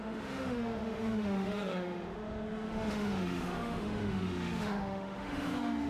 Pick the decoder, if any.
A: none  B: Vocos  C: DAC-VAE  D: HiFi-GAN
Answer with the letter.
C